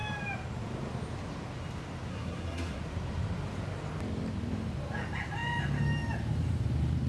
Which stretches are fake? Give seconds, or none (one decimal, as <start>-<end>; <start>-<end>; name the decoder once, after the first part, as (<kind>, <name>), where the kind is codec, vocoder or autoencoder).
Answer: 2.1-2.8 (codec, SNAC)